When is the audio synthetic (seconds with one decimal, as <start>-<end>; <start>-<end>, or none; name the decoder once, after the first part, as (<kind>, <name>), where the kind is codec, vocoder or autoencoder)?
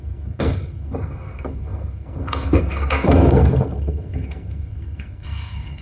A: 0.0-5.8 (codec, SNAC)